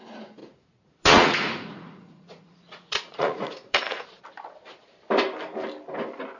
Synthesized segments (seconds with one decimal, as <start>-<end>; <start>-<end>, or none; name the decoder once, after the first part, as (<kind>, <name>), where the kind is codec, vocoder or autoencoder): 0.4-4.2 (vocoder, Vocos)